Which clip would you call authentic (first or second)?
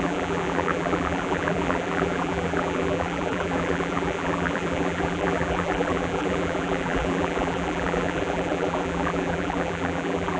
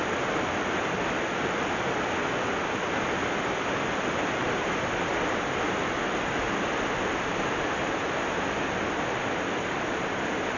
second